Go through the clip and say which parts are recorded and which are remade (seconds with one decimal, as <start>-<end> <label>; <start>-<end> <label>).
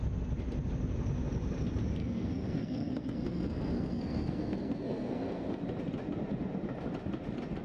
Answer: 0.0-2.0 recorded; 2.0-5.6 remade; 5.6-7.6 recorded